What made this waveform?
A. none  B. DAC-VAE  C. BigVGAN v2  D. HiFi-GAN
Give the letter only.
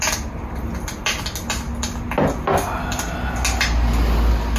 A